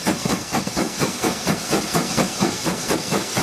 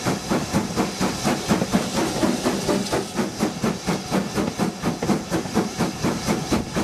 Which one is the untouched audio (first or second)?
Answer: second